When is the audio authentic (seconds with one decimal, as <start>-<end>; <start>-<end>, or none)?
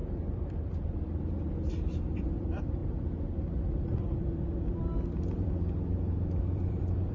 2.8-3.8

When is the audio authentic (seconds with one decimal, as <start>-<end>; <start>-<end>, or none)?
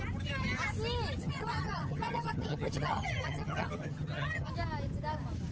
0.0-1.2; 4.5-5.5